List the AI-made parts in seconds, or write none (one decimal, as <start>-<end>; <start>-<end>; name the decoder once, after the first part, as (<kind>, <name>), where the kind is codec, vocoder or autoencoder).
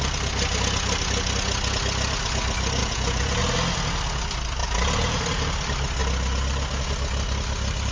2.8-3.4 (vocoder, Vocos); 4.6-5.2